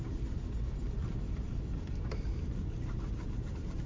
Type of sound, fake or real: real